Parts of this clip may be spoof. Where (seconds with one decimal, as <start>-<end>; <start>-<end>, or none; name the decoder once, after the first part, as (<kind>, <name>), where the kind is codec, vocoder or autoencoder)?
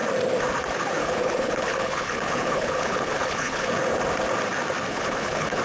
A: 1.0-3.7 (codec, HILCodec); 4.9-5.6